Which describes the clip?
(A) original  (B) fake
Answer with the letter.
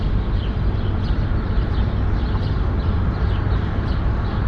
A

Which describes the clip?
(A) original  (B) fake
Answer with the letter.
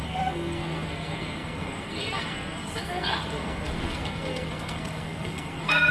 B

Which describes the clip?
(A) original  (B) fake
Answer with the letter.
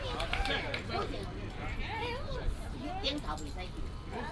A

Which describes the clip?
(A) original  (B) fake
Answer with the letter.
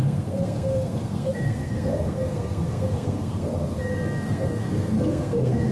B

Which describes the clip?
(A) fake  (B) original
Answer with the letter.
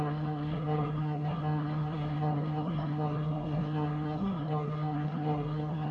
A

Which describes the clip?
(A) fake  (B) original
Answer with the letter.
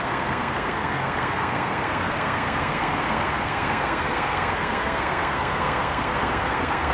A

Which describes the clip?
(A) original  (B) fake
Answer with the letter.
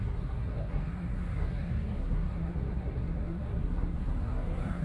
B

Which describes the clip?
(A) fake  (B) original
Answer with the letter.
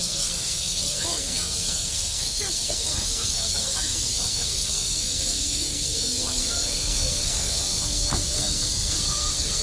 A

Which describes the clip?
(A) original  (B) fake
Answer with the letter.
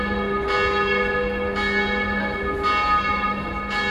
A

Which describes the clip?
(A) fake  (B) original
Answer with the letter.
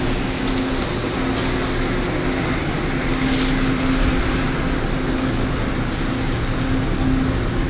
B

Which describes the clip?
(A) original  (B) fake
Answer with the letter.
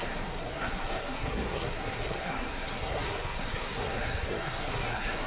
B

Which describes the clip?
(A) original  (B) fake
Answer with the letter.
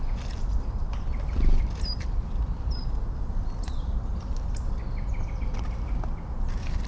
A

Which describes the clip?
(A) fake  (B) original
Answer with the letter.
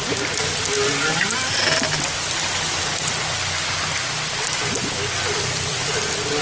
B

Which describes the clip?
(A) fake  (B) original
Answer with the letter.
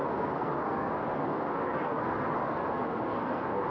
A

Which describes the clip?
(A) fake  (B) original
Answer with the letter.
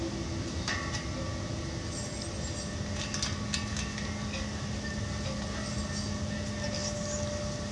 B